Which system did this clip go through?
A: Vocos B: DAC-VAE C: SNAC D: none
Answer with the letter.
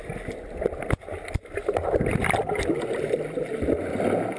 D